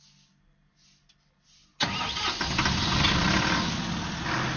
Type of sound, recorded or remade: recorded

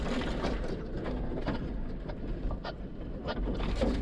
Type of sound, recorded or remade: recorded